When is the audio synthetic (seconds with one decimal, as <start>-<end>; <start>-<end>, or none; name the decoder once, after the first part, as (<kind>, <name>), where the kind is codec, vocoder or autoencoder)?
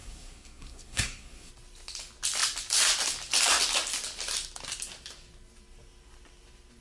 0.0-1.5 (codec, SNAC)